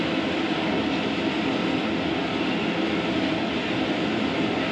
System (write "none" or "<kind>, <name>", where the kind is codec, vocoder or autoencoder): none